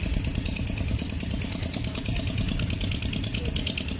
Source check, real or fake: real